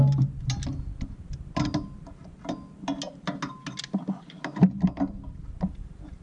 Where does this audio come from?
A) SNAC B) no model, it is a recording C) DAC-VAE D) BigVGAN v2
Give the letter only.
B